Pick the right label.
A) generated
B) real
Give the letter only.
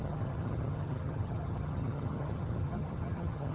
A